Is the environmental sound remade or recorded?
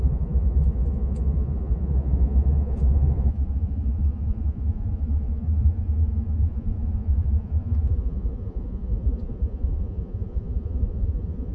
remade